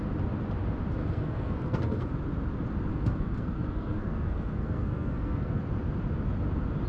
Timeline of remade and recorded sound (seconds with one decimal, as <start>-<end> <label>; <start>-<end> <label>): 0.0-1.0 recorded; 1.0-2.1 remade; 2.1-2.9 recorded; 2.9-5.6 remade; 5.6-6.9 recorded